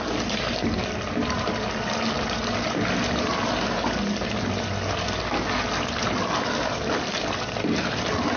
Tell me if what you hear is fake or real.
real